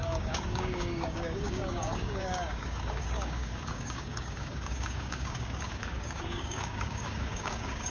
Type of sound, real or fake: fake